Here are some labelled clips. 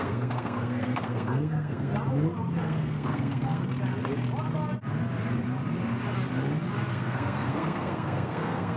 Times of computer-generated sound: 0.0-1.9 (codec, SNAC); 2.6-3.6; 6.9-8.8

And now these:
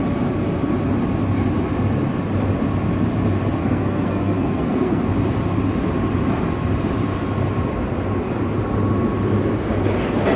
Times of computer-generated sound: 3.6-5.0 (codec, SNAC)

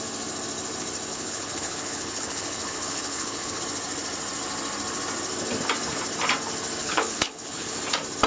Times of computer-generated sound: 1.1-3.6 (codec, HILCodec); 6.8-7.8

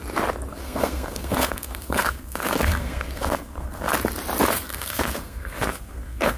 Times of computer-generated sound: 0.5-3.9 (codec, SNAC); 4.5-6.4

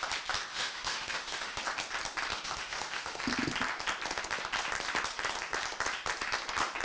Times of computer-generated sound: 0.5-1.6 (autoencoder, DAC-VAE); 2.3-3.2